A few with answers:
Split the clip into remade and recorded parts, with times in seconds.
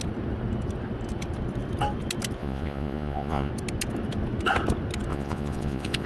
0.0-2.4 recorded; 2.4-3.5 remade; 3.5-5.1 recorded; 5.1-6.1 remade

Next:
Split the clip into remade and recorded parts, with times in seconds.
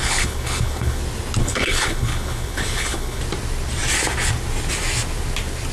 0.0-1.0 remade; 1.0-1.4 recorded; 1.4-3.2 remade; 3.2-5.7 recorded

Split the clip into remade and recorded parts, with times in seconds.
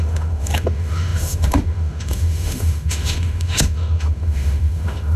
0.0-5.2 remade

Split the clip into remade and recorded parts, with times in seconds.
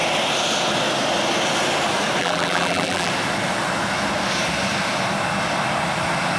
0.0-2.2 recorded; 2.2-3.1 remade; 3.1-6.4 recorded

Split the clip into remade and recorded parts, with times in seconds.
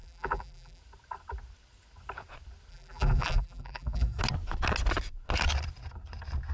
0.0-0.8 remade; 0.8-2.7 recorded; 2.7-4.2 remade; 4.2-6.5 recorded